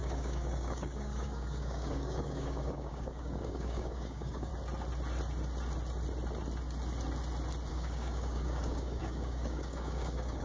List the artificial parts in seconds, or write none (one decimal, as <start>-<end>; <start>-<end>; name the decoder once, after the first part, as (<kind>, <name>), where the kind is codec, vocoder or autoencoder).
0.0-4.5 (codec, DAC); 7.7-10.4